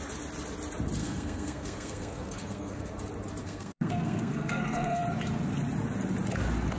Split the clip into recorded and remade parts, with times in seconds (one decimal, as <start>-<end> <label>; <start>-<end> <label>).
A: 0.0-1.0 recorded; 1.0-2.9 remade; 2.9-3.4 recorded; 3.4-5.0 remade; 5.0-6.8 recorded